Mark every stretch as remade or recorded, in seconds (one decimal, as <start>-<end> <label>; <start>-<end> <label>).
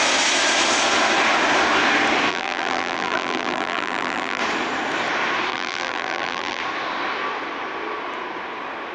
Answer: 0.0-2.3 recorded; 2.3-4.4 remade; 4.4-5.5 recorded; 5.5-6.6 remade; 6.6-8.9 recorded